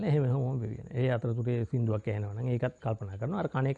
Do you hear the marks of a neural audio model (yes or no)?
no